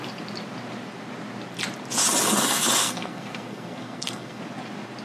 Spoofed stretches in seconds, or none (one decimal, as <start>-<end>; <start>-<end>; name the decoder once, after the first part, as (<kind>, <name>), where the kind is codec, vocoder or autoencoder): 2.8-4.4 (codec, SNAC)